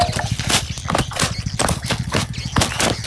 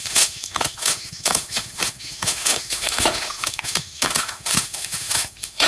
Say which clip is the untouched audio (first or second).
first